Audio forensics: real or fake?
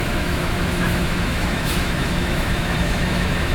fake